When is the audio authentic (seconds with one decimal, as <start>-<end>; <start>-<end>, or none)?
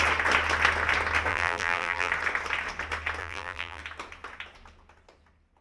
0.0-1.3; 2.1-3.2; 3.8-5.6